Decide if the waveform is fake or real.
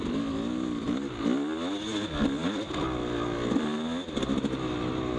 real